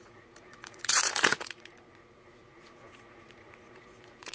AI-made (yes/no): yes